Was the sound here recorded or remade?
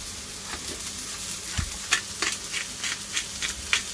recorded